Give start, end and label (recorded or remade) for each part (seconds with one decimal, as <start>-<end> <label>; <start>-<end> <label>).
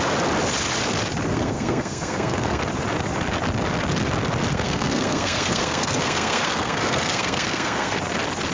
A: 0.0-1.3 recorded; 1.3-2.6 remade; 2.6-4.5 recorded; 4.5-8.0 remade; 8.0-8.5 recorded